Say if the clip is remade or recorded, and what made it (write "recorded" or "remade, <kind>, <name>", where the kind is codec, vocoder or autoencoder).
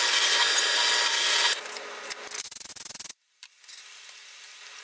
recorded